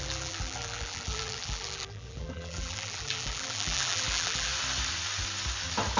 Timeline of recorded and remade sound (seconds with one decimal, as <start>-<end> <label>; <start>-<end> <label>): 0.0-4.5 remade; 4.5-6.0 recorded

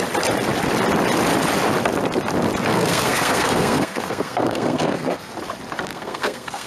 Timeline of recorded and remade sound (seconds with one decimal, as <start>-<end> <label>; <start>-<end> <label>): 0.0-2.7 recorded; 2.7-5.3 remade; 5.3-5.9 recorded; 5.9-6.7 remade

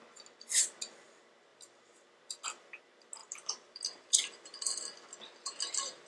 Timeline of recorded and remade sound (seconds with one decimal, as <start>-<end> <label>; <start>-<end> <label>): 0.0-3.2 recorded; 3.2-4.6 remade; 4.6-6.1 recorded